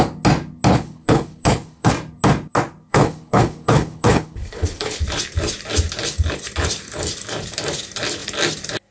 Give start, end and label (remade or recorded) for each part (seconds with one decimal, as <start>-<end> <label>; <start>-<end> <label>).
0.0-0.7 recorded; 0.7-1.9 remade; 1.9-2.9 recorded; 2.9-5.0 remade; 5.0-8.9 recorded